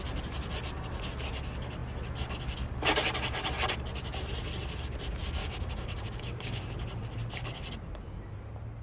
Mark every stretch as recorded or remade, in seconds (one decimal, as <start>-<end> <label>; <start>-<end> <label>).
0.0-5.4 recorded; 5.4-6.6 remade; 6.6-8.8 recorded